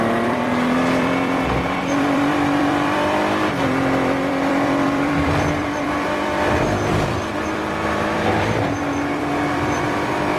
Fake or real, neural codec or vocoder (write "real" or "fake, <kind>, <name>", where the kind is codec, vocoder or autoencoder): fake, vocoder, BigVGAN v2